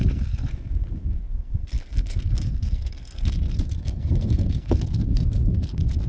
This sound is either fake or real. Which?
fake